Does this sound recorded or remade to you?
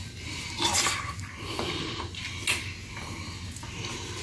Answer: recorded